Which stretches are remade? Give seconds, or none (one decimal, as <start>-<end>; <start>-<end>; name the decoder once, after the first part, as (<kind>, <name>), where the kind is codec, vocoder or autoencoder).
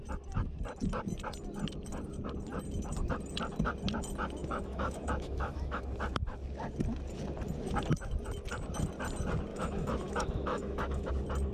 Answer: 4.4-5.8 (autoencoder, DAC-VAE); 9.5-11.1